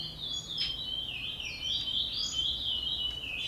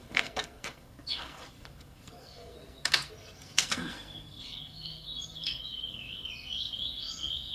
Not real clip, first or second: second